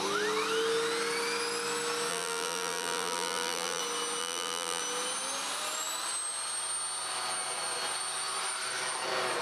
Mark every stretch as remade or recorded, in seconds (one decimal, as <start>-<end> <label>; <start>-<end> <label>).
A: 0.0-2.1 recorded; 2.1-3.8 remade; 3.8-4.2 recorded; 4.2-4.8 remade; 4.8-9.4 recorded